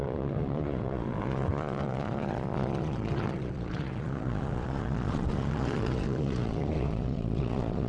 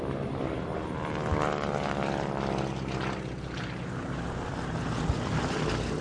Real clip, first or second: second